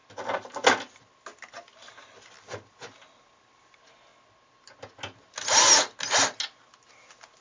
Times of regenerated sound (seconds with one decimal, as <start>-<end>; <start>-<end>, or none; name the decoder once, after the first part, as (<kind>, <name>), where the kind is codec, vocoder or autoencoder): none